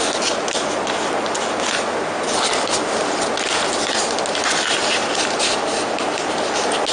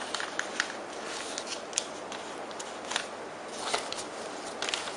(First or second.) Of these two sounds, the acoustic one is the first